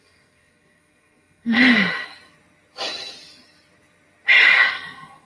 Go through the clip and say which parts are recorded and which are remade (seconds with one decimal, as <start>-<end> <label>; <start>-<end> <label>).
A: 0.0-1.6 remade; 1.6-4.7 recorded; 4.7-5.2 remade